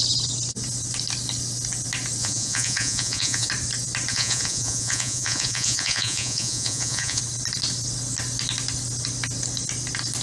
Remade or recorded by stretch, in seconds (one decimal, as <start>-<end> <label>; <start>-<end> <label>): 0.0-2.2 recorded; 2.2-3.5 remade; 3.5-4.1 recorded; 4.1-7.2 remade; 7.2-10.2 recorded